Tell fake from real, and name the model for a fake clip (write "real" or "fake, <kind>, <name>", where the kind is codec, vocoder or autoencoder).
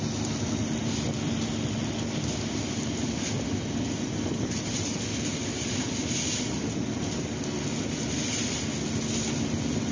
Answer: real